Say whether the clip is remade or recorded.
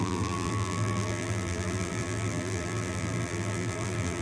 remade